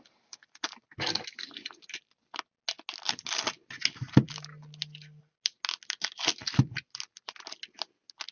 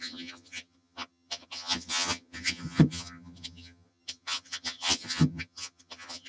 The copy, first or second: second